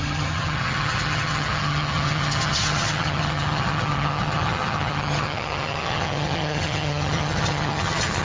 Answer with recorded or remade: remade